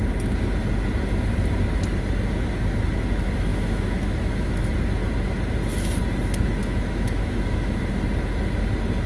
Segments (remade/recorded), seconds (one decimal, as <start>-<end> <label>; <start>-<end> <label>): 0.0-3.5 recorded; 3.5-4.7 remade; 4.7-6.6 recorded; 6.6-7.8 remade; 7.8-9.1 recorded